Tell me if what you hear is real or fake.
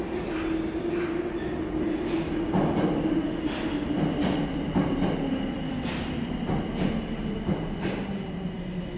real